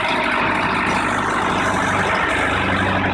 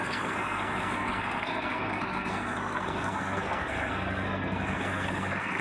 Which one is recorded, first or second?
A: first